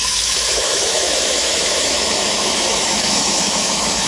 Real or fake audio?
fake